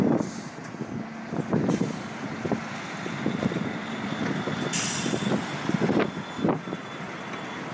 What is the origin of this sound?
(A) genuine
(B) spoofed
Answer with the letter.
A